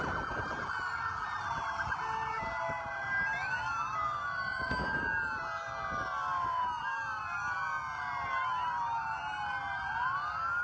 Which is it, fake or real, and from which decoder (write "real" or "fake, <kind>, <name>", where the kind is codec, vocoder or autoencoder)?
real